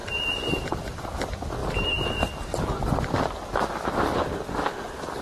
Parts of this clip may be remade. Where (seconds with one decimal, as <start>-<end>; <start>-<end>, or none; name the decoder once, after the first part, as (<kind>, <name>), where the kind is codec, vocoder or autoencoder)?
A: none